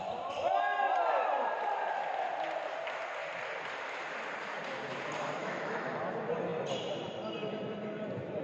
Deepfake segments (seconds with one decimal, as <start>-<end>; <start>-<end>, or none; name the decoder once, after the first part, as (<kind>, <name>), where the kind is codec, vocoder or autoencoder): 5.4-6.0 (autoencoder, DAC-VAE)

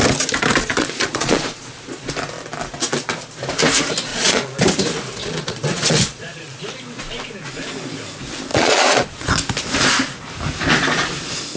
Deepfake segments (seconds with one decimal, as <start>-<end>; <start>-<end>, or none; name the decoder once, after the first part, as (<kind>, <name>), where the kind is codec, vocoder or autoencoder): 0.6-2.1 (vocoder, Vocos); 4.1-4.6; 5.2-6.6; 8.5-9.3

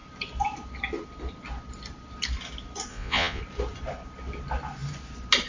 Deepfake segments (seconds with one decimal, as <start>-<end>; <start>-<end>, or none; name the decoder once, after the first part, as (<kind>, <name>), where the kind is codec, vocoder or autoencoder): 2.9-3.4 (vocoder, Vocos)

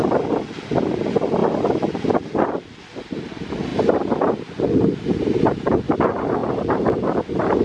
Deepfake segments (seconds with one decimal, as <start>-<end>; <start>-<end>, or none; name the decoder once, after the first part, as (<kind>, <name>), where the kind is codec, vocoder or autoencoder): 1.4-2.1 (vocoder, BigVGAN v2); 3.7-5.8; 6.4-7.0

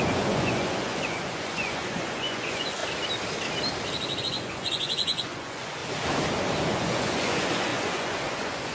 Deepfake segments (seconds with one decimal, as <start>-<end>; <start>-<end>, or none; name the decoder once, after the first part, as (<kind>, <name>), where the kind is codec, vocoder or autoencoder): 0.0-2.8 (vocoder, Vocos); 4.2-5.8; 6.6-8.7

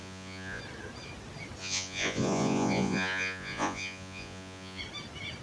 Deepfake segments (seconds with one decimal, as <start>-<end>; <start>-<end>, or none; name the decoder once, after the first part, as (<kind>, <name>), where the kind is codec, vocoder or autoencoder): 0.0-0.6 (vocoder, Vocos); 1.6-4.8

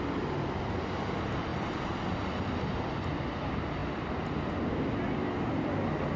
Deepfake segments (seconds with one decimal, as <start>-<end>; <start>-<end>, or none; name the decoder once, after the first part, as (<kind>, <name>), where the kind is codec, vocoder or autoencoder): 1.5-2.6 (vocoder, BigVGAN v2)